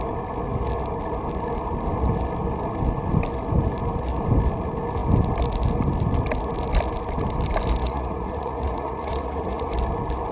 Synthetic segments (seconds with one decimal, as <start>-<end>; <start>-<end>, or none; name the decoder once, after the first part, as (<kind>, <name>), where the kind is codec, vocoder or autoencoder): 7.8-9.7 (vocoder, Vocos)